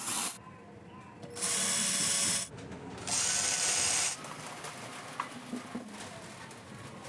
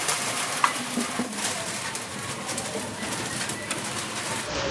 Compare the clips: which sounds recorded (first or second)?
first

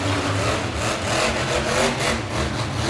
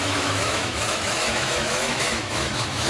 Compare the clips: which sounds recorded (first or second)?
first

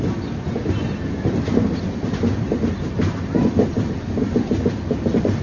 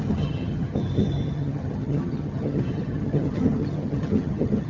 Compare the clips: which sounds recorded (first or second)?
first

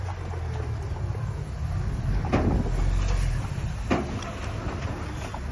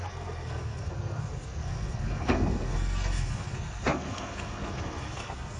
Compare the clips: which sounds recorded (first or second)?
first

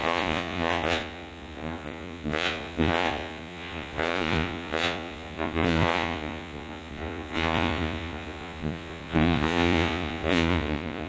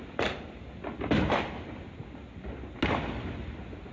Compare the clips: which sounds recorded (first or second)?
second